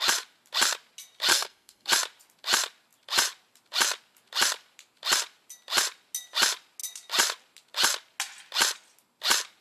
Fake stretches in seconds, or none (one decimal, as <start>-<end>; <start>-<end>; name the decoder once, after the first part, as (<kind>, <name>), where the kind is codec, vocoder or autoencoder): 1.3-1.9 (codec, SNAC)